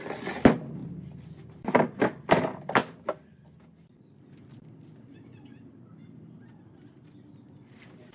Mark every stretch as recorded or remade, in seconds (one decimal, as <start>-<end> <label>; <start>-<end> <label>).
0.0-8.1 recorded